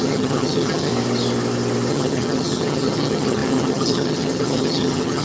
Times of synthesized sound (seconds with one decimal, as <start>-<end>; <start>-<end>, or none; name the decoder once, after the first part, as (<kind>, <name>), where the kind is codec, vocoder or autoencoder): 0.0-0.9 (vocoder, HiFi-GAN); 1.9-5.2